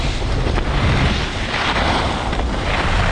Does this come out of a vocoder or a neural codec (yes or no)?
no